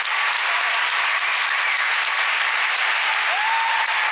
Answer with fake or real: real